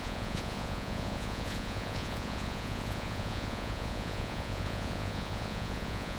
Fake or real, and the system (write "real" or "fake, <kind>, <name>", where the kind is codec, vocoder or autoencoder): fake, vocoder, Vocos